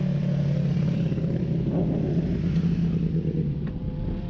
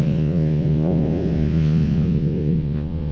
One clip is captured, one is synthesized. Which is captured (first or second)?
first